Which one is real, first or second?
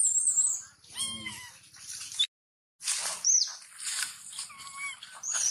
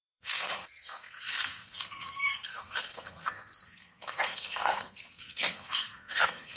first